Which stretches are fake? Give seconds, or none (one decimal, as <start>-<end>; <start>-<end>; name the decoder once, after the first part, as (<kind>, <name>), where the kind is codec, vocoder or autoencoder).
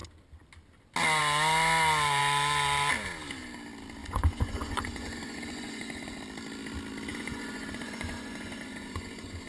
4.0-6.2 (vocoder, Vocos); 7.1-9.5